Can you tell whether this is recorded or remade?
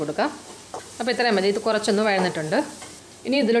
remade